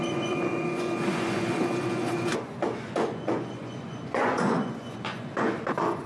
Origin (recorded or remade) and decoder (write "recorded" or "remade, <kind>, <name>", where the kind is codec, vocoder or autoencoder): remade, vocoder, Vocos